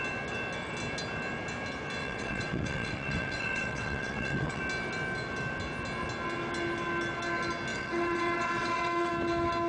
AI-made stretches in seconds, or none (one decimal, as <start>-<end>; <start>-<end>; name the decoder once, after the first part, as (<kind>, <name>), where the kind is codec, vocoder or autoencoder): 2.0-4.6 (vocoder, WaveNeXt); 7.7-9.1